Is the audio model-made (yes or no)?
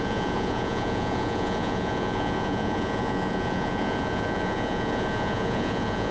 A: yes